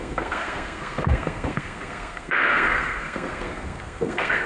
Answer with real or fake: fake